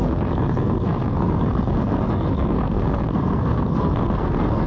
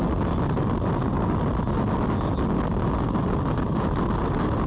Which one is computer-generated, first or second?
first